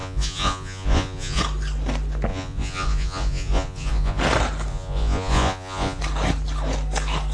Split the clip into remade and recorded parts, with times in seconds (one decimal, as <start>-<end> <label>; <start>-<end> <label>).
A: 0.0-1.4 remade; 1.4-2.3 recorded; 2.3-4.2 remade; 4.2-4.7 recorded; 4.7-6.0 remade; 6.0-7.3 recorded